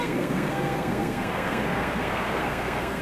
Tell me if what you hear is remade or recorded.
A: remade